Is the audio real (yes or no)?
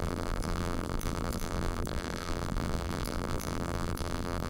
no